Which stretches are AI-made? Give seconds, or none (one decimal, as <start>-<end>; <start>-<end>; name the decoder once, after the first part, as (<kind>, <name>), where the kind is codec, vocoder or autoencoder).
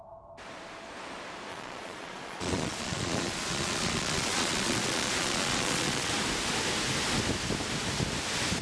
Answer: 1.5-6.1 (vocoder, Vocos)